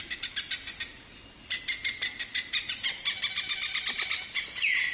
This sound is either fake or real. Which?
real